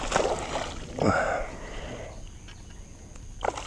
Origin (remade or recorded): recorded